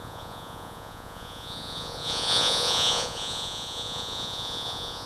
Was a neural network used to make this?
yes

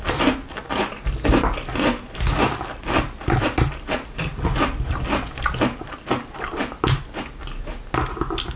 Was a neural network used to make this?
no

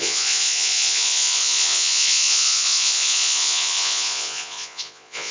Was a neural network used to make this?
yes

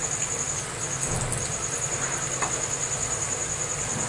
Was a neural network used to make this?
no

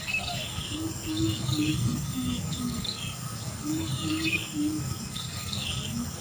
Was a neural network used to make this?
yes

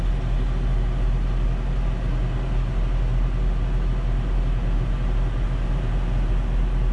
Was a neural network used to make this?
no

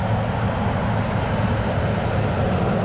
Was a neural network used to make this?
no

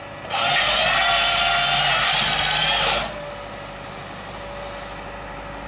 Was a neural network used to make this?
no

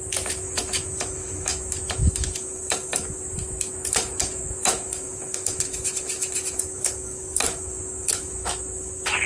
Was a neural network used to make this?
yes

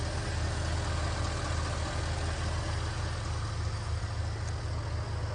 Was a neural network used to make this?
no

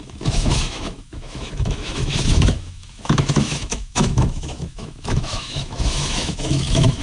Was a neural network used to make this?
yes